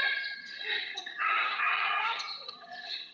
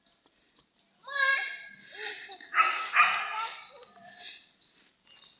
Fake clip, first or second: first